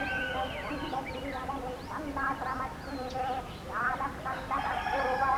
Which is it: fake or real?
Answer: fake